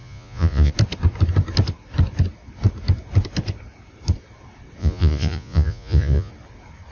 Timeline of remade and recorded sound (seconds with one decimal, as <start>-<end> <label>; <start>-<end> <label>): 0.0-0.7 remade; 0.7-4.8 recorded; 4.8-6.3 remade; 6.3-6.9 recorded